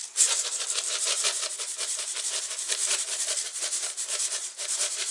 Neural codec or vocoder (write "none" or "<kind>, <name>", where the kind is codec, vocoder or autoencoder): vocoder, BigVGAN v2